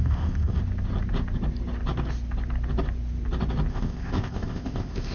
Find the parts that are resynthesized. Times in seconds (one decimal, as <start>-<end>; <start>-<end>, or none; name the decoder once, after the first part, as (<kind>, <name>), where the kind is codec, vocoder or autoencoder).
0.0-0.6 (codec, ZipCodec); 3.7-5.1

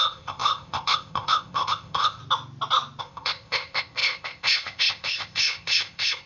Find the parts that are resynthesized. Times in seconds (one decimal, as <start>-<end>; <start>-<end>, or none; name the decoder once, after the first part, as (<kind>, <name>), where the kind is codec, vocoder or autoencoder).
0.0-2.2 (codec, ZipCodec); 3.0-6.3

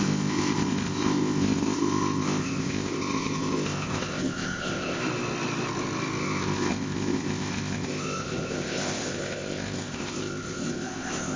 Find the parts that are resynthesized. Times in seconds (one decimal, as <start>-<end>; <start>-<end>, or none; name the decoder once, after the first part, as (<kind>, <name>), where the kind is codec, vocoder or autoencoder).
0.0-5.0 (codec, ZipCodec); 6.2-11.4